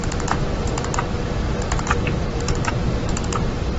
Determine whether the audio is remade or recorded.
remade